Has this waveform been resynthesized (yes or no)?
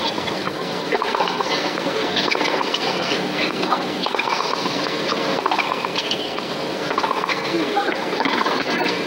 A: yes